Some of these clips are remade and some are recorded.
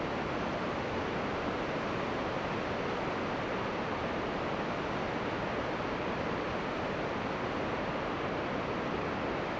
recorded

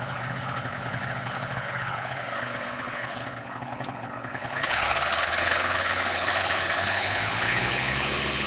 remade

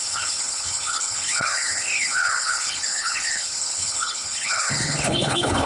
remade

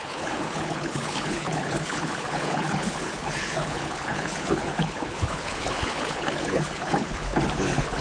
remade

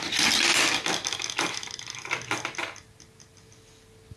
recorded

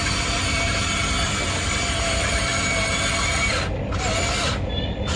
recorded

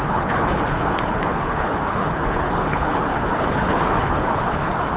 remade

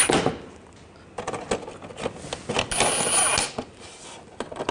recorded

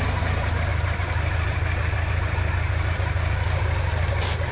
recorded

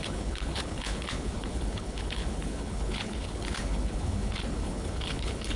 remade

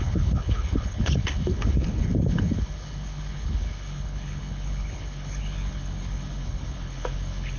remade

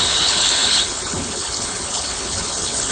remade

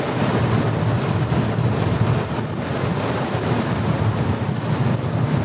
recorded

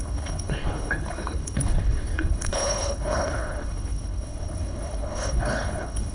remade